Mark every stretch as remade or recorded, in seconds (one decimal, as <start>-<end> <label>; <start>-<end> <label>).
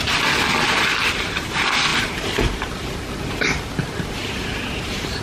0.0-1.9 recorded; 1.9-5.2 remade